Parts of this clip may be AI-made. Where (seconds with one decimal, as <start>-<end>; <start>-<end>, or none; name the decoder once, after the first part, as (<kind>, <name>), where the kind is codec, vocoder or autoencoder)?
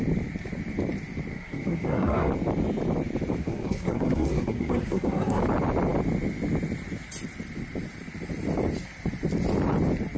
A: 1.3-2.3 (codec, SNAC); 3.4-5.4